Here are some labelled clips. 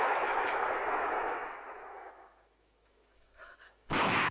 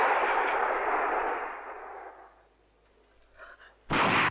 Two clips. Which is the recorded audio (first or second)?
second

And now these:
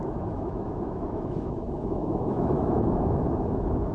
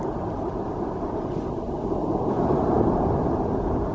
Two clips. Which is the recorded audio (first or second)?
second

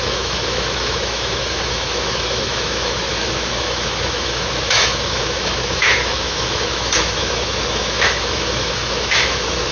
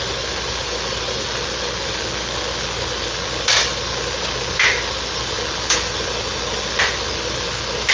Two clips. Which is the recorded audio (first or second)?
second